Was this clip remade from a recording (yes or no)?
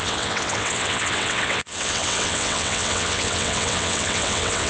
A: yes